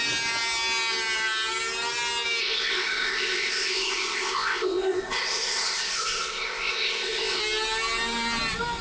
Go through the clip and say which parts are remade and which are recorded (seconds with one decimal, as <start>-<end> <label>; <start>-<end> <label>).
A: 0.0-2.4 recorded; 2.4-7.4 remade; 7.4-8.8 recorded